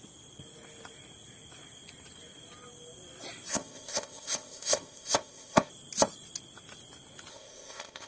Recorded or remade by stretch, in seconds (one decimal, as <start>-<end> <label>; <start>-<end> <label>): 0.0-3.5 recorded; 3.5-5.7 remade; 5.7-7.3 recorded; 7.3-8.1 remade